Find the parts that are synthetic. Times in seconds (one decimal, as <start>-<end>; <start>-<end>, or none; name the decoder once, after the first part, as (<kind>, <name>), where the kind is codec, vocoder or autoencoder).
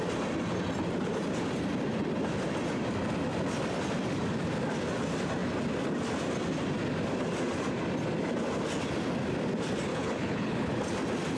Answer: 9.9-10.7 (codec, HILCodec)